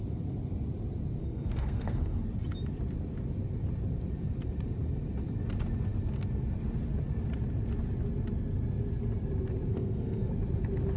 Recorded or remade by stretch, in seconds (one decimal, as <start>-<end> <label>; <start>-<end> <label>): 0.0-1.2 recorded; 1.2-2.2 remade; 2.2-9.7 recorded; 9.7-10.3 remade; 10.3-11.0 recorded